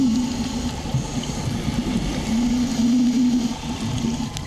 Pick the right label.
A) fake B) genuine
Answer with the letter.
B